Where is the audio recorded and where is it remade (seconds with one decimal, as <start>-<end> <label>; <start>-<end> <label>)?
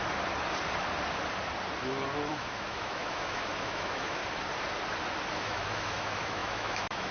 0.0-2.3 recorded; 2.3-4.2 remade; 4.2-5.3 recorded; 5.3-7.1 remade